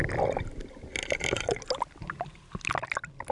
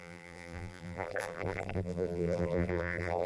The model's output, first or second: second